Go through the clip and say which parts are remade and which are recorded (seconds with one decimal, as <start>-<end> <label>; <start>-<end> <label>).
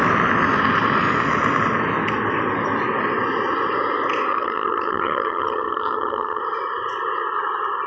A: 0.0-4.3 recorded; 4.3-6.4 remade; 6.4-7.9 recorded